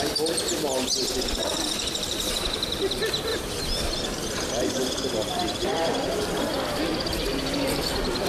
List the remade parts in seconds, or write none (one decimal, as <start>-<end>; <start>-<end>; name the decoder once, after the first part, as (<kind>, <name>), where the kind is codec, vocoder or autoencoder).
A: 1.4-2.3 (vocoder, BigVGAN v2); 3.3-6.4